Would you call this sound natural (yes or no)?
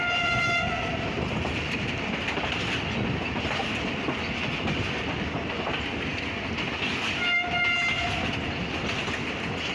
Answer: yes